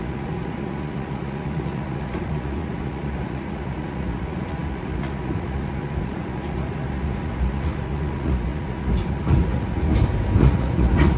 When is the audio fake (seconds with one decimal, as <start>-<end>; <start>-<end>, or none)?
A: 0.0-9.9; 10.4-11.2